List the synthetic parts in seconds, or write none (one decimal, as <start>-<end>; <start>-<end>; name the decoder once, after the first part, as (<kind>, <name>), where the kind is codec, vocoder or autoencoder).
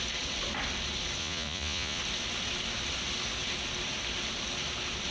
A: 1.2-2.0 (vocoder, Vocos)